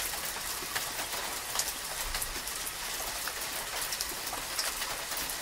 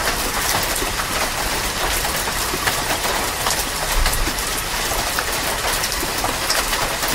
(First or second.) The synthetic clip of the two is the second